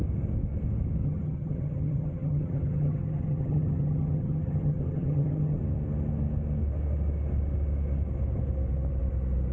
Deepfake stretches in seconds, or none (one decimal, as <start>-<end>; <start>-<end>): 1.0-5.6

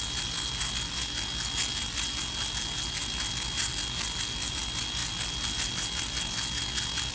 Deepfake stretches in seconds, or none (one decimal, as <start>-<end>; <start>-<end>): none

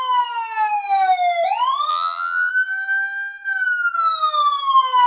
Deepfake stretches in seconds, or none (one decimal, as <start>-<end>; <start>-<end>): 1.9-2.5

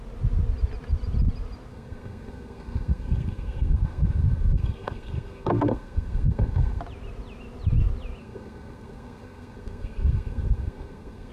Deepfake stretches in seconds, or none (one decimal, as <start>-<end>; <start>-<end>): 1.7-6.8; 8.2-11.3

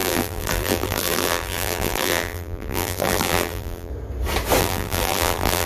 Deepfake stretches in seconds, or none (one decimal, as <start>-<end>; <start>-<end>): 0.0-3.9; 4.6-5.7